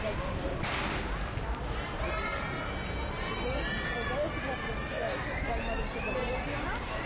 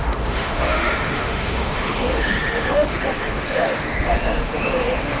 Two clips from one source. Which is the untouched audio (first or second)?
first